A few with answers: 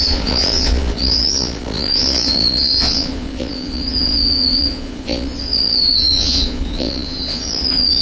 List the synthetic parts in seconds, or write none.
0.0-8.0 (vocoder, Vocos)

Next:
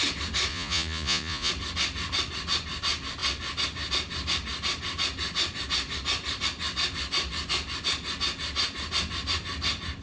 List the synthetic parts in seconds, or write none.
0.5-1.5 (vocoder, Vocos)

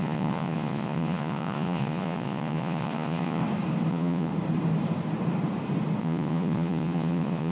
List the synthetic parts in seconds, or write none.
0.0-3.4 (vocoder, Vocos); 3.9-4.3; 6.0-7.5